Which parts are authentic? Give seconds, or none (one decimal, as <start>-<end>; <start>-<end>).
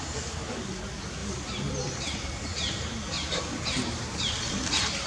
0.0-1.2; 1.7-2.5; 4.1-5.1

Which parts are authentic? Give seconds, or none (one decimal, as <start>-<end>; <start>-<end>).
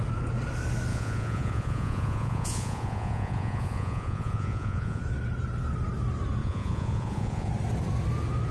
0.0-0.9; 5.0-6.4; 7.5-8.5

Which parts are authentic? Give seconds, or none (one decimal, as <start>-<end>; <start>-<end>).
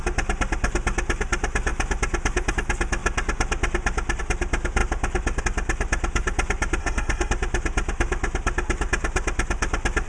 0.0-6.8; 7.3-10.1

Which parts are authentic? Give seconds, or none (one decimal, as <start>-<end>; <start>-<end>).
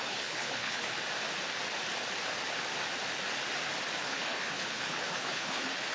0.9-4.0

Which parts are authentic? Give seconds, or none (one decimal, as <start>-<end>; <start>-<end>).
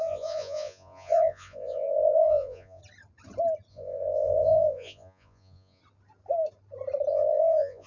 2.8-3.7; 5.8-7.1